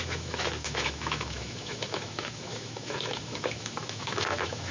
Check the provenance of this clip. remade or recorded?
remade